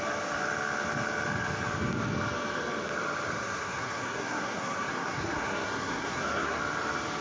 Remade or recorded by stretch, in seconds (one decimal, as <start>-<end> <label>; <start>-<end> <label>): 0.0-3.4 recorded; 3.4-6.6 remade; 6.6-7.2 recorded